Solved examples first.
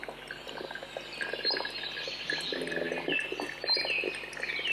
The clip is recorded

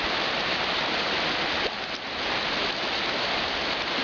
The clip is recorded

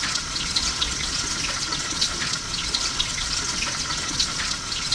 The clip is remade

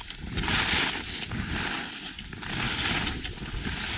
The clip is recorded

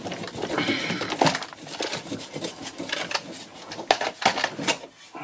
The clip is recorded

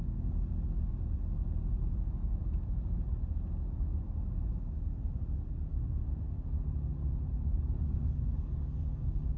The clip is recorded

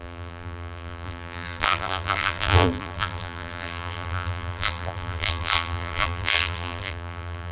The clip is remade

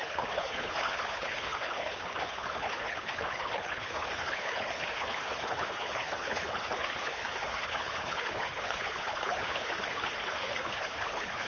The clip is remade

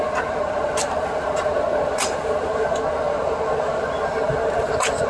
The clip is recorded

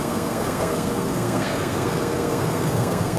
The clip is remade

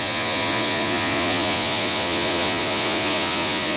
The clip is remade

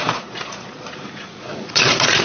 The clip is remade